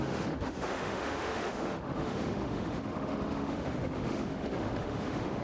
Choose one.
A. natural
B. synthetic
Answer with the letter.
B